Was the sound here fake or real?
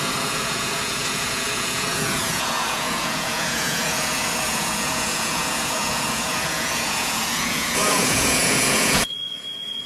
fake